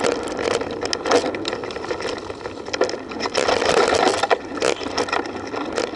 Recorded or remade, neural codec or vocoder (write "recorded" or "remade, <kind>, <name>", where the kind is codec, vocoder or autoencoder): recorded